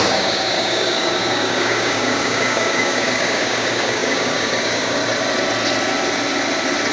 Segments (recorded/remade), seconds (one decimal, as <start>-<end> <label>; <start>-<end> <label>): 0.0-5.0 remade; 5.0-6.9 recorded

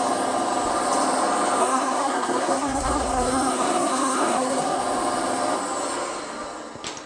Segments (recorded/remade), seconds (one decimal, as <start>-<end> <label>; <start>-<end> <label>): 0.0-1.6 recorded; 1.6-4.8 remade; 4.8-7.1 recorded

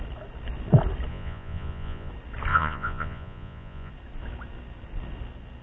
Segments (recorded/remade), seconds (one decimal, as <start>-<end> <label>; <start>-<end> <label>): 0.0-1.1 recorded; 1.1-2.1 remade; 2.1-2.5 recorded; 2.5-3.9 remade; 3.9-5.6 recorded